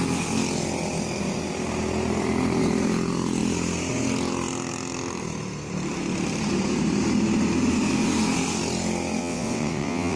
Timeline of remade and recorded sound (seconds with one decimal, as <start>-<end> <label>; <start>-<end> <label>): 0.0-9.2 recorded; 9.2-10.2 remade